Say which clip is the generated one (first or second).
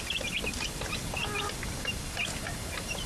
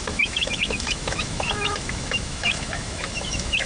second